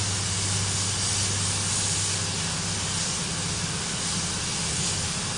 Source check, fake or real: real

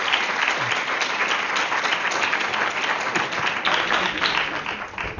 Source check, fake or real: real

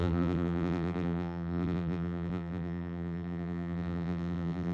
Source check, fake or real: fake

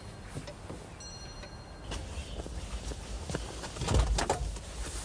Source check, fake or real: real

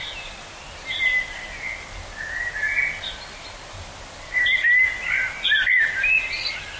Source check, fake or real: real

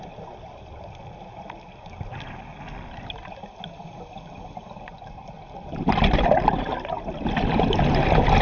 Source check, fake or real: real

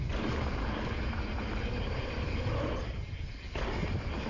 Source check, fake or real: real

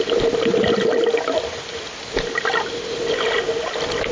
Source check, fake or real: real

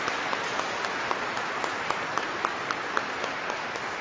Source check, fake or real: real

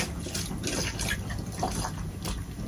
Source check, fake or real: real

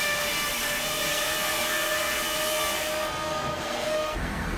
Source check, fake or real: fake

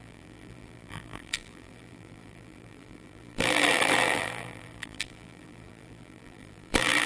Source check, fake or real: fake